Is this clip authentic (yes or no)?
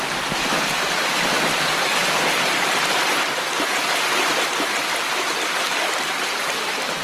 yes